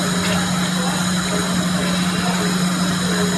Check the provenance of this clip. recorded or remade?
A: recorded